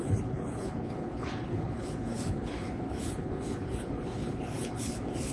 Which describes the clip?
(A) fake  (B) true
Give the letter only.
A